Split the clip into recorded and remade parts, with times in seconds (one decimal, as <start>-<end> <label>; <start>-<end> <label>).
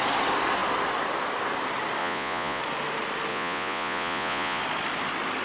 0.0-2.0 recorded; 2.0-2.6 remade; 2.6-3.3 recorded; 3.3-4.6 remade; 4.6-5.4 recorded